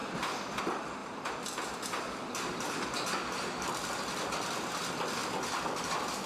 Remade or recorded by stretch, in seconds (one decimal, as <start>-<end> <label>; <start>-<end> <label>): 0.0-6.3 recorded